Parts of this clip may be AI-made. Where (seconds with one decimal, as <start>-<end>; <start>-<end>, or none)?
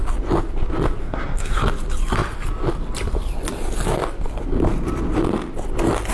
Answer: 1.0-1.6